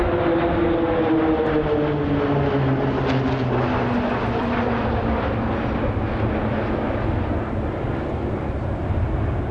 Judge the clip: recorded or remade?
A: recorded